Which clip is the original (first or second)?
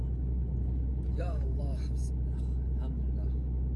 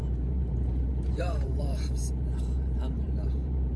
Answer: first